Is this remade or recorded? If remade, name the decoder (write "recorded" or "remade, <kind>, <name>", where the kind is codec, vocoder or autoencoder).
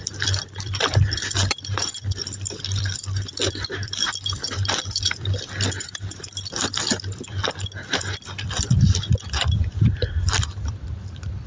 remade, vocoder, BigVGAN v2